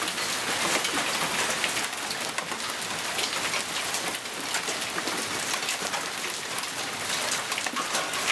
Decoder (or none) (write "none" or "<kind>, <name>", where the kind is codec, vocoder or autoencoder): none